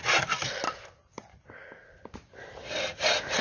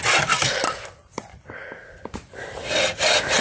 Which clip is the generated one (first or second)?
second